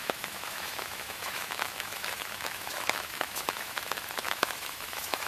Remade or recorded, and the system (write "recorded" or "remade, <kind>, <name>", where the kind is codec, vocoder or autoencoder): remade, autoencoder, DAC-VAE